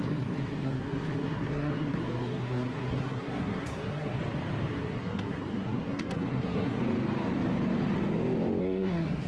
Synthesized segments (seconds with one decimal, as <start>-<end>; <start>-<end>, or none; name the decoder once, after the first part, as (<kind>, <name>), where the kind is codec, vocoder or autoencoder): 0.0-4.2 (codec, SNAC); 4.7-6.8; 8.6-9.3